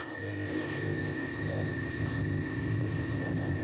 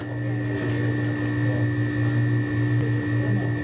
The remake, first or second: first